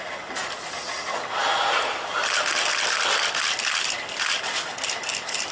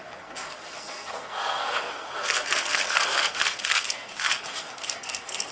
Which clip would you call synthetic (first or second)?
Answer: second